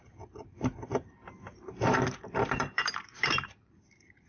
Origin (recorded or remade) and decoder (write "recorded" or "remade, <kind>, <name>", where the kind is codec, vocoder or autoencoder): remade, vocoder, BigVGAN v2